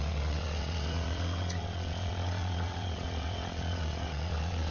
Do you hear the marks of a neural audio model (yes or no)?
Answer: yes